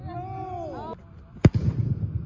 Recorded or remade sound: recorded